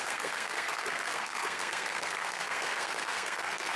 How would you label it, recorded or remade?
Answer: remade